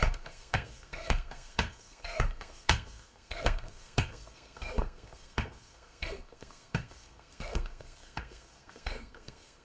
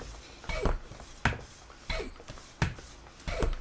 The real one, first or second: second